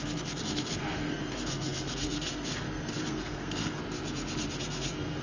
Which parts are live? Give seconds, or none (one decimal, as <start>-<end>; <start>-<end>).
3.8-4.6